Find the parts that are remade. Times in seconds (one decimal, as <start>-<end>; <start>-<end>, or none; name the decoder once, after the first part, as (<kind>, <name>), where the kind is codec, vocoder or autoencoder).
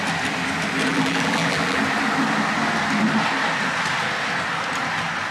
0.9-1.8 (vocoder, BigVGAN v2)